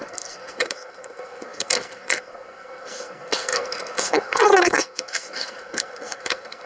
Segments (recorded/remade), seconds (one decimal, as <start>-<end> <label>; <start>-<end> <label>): 0.0-6.7 remade